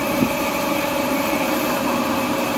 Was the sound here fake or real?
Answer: fake